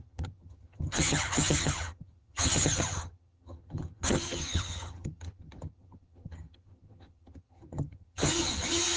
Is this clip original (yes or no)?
no